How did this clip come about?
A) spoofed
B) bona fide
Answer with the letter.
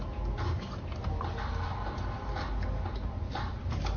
B